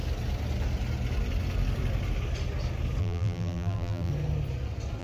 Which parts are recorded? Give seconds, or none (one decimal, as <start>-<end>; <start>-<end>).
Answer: 0.0-3.0; 4.1-5.0